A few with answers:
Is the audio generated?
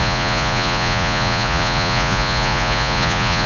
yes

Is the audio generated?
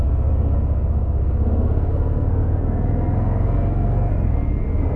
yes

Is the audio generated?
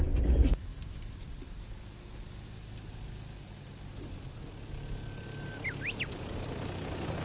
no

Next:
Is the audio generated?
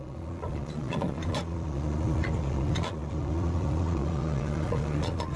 yes